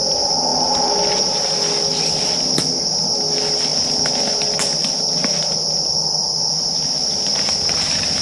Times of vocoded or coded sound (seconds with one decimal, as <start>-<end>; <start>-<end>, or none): none